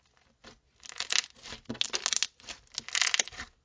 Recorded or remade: recorded